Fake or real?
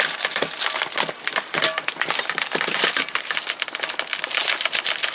real